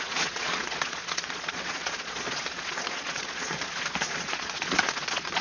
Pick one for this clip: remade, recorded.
remade